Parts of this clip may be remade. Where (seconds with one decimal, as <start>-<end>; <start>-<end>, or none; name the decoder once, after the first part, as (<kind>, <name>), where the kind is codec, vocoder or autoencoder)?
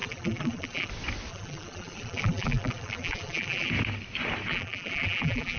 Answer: 0.0-0.9 (vocoder, BigVGAN v2); 1.3-3.7; 4.5-5.6